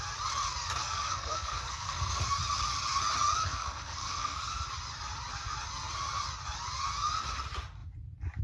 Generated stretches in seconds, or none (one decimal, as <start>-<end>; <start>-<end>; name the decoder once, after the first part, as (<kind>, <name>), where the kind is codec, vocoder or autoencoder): 0.8-2.2 (codec, SNAC); 3.4-4.5